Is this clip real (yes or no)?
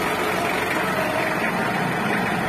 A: yes